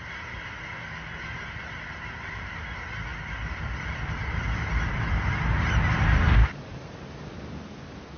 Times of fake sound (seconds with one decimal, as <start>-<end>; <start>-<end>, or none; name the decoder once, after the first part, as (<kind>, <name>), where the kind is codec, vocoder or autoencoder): 3.1-5.3 (vocoder, BigVGAN v2)